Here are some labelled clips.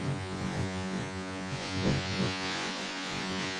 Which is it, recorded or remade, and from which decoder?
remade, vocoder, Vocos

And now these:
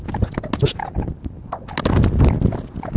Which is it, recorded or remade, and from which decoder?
recorded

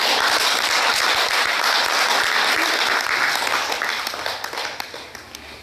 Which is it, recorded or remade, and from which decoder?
recorded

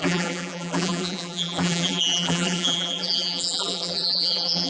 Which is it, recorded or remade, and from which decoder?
remade, vocoder, BigVGAN v2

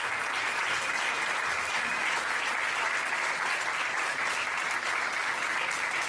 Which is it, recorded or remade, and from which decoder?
recorded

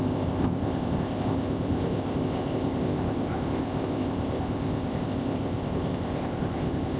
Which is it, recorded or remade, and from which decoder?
remade, codec, ZipCodec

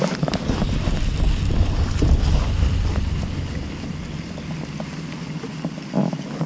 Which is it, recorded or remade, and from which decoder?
recorded